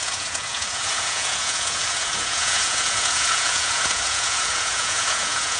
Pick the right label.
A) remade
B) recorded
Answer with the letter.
A